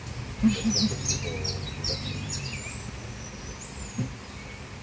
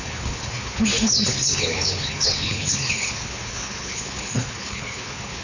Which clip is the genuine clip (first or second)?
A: first